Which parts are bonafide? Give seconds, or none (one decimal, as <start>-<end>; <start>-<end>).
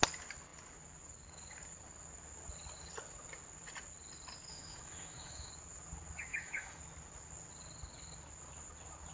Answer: 0.0-4.5; 5.5-6.3; 6.8-9.1